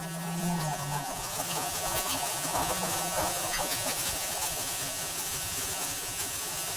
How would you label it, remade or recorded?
remade